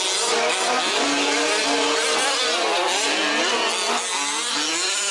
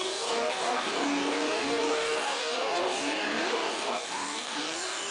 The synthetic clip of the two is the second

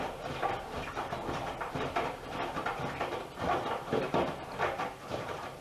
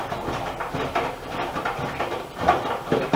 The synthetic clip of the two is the first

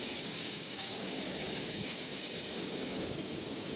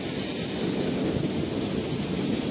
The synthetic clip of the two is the first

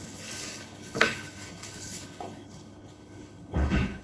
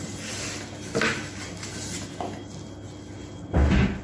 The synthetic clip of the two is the first